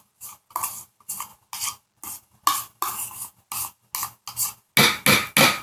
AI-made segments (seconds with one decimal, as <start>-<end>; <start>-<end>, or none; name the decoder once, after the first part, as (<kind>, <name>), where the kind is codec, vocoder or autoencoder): none